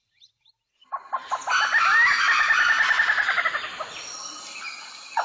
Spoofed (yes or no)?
no